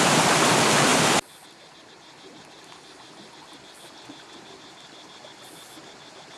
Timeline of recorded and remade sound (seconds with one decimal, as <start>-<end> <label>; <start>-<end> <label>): 0.0-6.4 recorded